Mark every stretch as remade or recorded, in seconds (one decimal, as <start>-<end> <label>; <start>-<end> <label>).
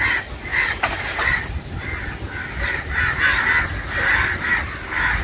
0.0-5.2 recorded